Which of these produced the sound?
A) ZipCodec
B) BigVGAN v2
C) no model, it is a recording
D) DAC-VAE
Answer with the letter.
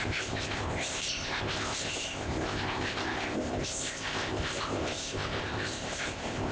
A